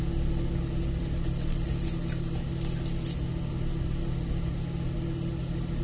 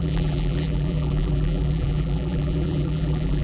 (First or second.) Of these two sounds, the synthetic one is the second